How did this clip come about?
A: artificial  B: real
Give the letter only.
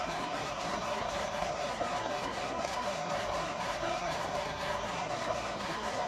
A